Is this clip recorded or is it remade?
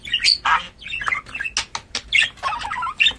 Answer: recorded